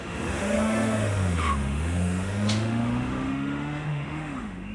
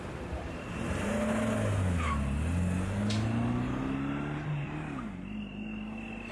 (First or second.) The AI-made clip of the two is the first